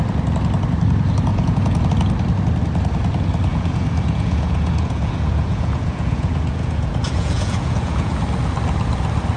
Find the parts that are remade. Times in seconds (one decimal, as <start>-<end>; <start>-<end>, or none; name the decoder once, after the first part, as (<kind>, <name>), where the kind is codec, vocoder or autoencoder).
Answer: 1.3-1.9 (vocoder, Vocos); 3.5-8.2